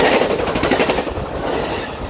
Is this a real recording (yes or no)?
yes